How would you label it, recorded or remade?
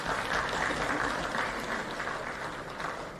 recorded